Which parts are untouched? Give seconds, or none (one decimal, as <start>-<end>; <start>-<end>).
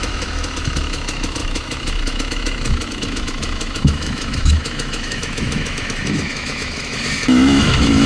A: none